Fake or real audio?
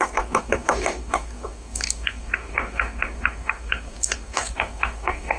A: fake